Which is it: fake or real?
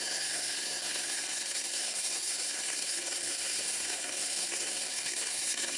fake